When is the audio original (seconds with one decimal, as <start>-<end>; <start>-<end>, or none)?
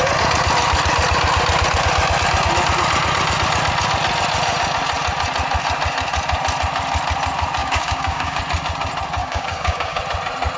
0.0-7.6; 8.4-9.2; 10.0-10.6